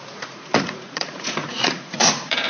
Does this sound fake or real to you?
fake